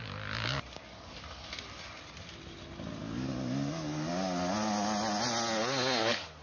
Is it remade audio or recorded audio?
recorded